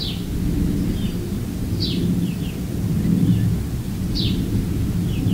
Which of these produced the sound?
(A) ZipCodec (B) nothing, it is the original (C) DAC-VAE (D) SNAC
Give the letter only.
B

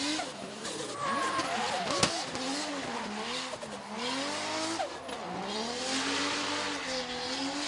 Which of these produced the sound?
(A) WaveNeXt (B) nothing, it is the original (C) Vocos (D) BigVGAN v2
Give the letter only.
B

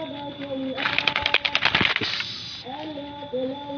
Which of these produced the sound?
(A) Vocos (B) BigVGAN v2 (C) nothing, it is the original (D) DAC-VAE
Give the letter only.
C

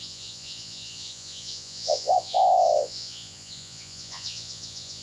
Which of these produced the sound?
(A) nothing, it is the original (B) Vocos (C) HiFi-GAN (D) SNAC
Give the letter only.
B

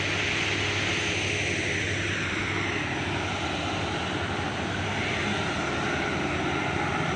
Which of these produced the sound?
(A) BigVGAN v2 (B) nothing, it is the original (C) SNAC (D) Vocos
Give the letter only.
B